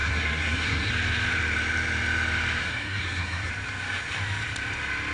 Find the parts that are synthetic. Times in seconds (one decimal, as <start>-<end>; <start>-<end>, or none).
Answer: 0.0-0.9; 2.6-3.5